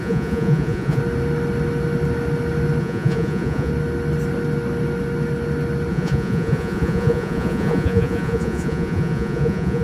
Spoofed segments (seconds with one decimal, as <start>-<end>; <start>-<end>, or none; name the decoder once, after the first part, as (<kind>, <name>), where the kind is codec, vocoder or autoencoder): 0.0-1.0 (vocoder, Vocos); 2.8-3.7; 5.9-9.8